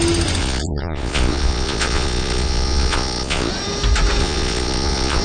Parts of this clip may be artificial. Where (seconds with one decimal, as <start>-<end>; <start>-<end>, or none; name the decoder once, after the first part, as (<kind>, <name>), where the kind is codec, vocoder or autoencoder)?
0.4-3.5 (vocoder, Vocos); 4.2-5.2